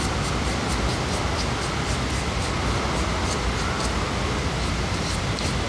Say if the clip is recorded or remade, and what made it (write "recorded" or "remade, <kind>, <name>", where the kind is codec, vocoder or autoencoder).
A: recorded